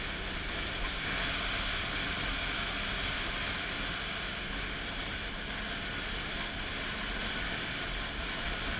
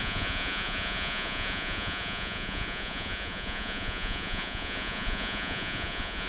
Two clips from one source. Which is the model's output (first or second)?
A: second